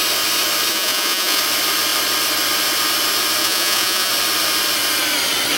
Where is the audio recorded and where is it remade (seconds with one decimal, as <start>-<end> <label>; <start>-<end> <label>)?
0.0-0.7 recorded; 0.7-1.4 remade; 1.4-3.4 recorded; 3.4-4.1 remade; 4.1-5.6 recorded

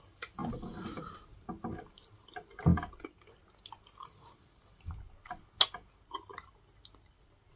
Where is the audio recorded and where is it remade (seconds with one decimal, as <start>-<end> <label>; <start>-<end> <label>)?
0.0-7.6 recorded

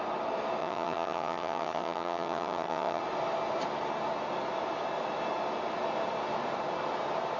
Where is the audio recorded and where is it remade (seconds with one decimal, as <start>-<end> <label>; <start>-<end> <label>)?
0.0-0.6 recorded; 0.6-3.0 remade; 3.0-7.4 recorded

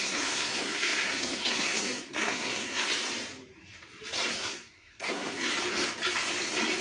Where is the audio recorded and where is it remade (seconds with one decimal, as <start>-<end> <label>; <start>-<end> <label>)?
0.0-2.9 remade; 2.9-4.3 recorded; 4.3-5.5 remade; 5.5-6.8 recorded

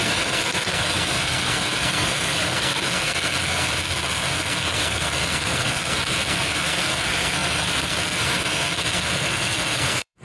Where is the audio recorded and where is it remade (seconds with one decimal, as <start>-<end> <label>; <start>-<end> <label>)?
0.0-10.2 remade

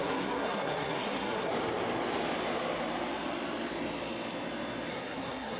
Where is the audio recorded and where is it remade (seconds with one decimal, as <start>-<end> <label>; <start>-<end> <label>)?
0.0-1.5 remade; 1.5-4.9 recorded; 4.9-5.6 remade